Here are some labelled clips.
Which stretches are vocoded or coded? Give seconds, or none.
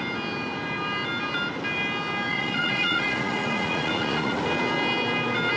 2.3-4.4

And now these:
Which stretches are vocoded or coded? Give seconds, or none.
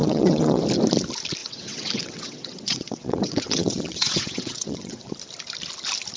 0.0-0.6; 1.4-5.1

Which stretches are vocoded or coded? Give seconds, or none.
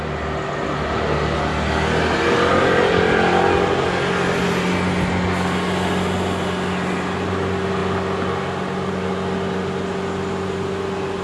none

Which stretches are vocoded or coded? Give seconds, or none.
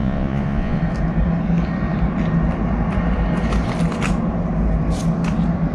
0.0-0.8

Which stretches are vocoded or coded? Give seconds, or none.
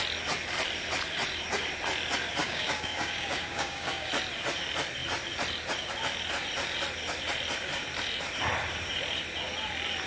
2.4-4.1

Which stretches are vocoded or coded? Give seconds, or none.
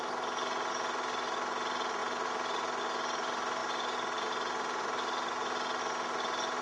none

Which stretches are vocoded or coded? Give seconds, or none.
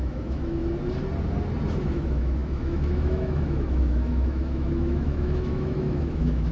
0.0-0.6; 1.7-6.5